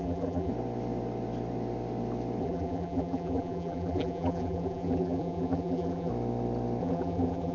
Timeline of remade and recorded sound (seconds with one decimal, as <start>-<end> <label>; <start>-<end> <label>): 0.0-0.5 remade; 0.5-2.4 recorded; 2.4-6.1 remade; 6.1-6.8 recorded; 6.8-7.5 remade